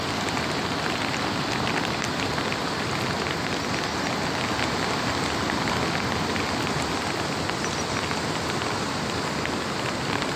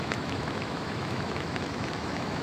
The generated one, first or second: second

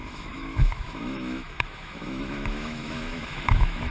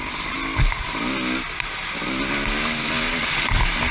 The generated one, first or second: first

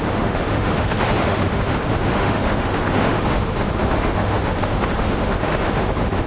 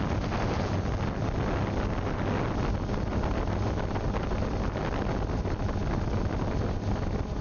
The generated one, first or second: first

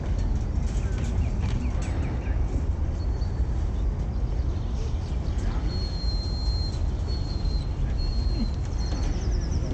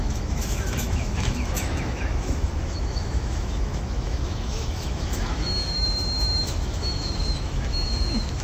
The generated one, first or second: second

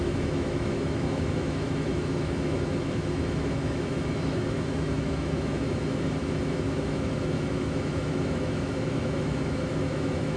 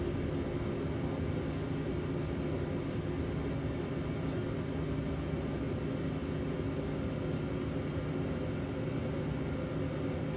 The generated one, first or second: first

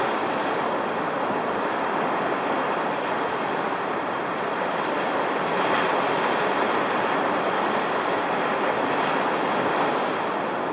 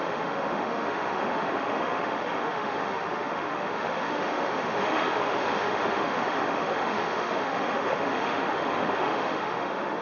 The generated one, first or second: second